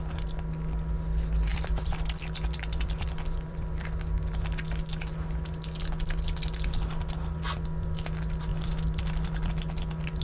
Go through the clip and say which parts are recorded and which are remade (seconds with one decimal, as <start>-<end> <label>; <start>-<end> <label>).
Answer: 0.0-1.5 recorded; 1.5-4.2 remade; 4.2-8.5 recorded; 8.5-9.5 remade; 9.5-10.2 recorded